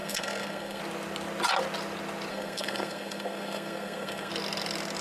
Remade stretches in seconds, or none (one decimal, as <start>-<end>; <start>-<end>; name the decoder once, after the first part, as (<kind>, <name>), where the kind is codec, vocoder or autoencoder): 0.0-0.8 (codec, SNAC); 2.3-4.3